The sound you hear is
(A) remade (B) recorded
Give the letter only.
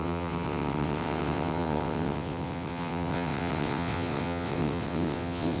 A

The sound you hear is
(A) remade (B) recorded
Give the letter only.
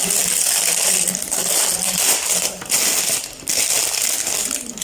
B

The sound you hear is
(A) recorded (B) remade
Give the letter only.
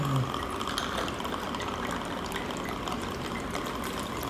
A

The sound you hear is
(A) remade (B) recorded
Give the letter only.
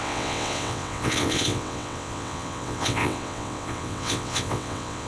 A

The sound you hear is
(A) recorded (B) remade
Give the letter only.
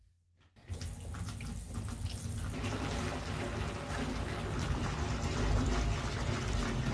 A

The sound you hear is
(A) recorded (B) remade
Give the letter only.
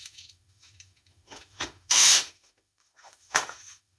B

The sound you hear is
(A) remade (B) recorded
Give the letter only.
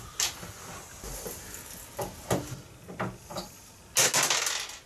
B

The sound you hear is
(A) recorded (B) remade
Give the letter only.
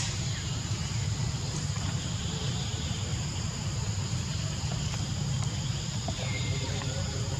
B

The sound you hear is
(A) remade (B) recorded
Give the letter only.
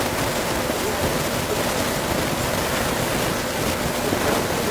B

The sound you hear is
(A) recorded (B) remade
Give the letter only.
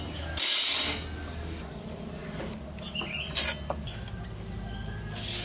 A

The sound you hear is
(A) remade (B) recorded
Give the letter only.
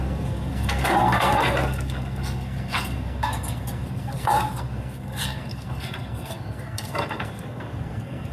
A